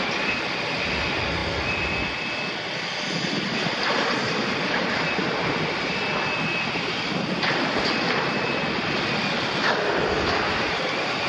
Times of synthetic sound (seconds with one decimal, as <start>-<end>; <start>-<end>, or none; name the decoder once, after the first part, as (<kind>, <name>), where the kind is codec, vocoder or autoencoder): none